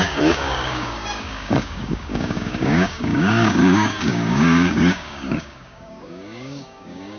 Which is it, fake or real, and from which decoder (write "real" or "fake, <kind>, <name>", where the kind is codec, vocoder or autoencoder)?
fake, codec, DAC